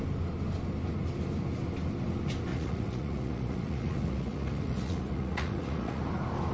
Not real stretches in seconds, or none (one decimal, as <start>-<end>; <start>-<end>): 2.5-6.0